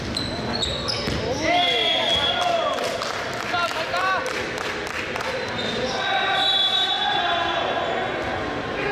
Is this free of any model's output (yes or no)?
yes